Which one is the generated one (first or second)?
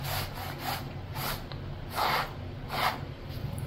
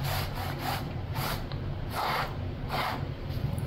second